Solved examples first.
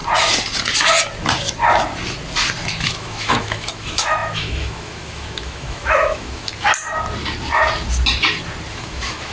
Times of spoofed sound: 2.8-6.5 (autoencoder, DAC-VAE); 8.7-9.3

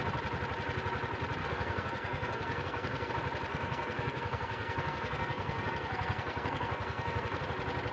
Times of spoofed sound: 1.4-3.1 (codec, SNAC); 3.5-7.4

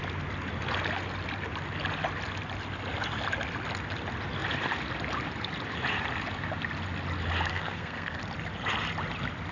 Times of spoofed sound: 7.5-8.2 (codec, SNAC)

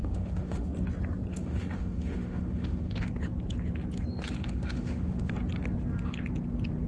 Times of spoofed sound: 0.0-0.7 (autoencoder, DAC-VAE); 1.3-3.1; 4.4-5.3

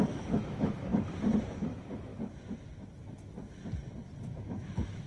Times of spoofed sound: 0.0-0.9 (autoencoder, DAC-VAE); 1.5-2.1; 4.2-5.1